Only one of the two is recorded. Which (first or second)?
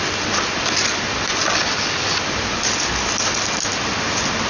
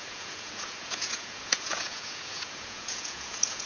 first